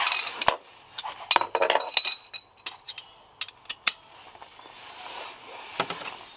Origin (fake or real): real